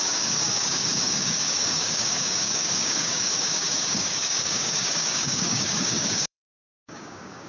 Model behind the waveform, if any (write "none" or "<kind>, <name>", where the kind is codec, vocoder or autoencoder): codec, DAC